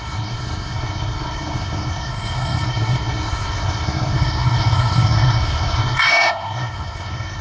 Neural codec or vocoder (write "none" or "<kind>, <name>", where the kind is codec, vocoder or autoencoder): codec, SNAC